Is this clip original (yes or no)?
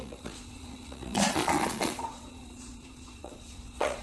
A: no